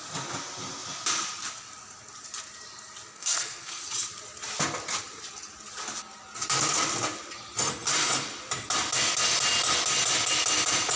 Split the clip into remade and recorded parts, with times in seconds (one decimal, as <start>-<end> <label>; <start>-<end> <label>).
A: 0.0-3.1 recorded; 3.1-3.8 remade; 3.8-11.0 recorded